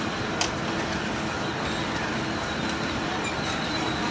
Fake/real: real